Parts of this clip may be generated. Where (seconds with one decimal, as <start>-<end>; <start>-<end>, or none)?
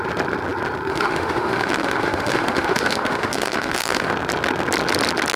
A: 0.9-4.1